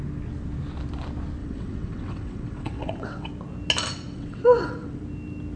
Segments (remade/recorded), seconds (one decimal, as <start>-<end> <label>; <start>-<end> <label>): 0.0-1.4 recorded; 1.4-3.3 remade; 3.3-4.1 recorded; 4.1-5.0 remade; 5.0-5.6 recorded